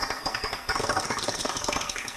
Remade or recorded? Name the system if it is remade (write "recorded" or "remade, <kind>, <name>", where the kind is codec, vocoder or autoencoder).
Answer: remade, codec, SNAC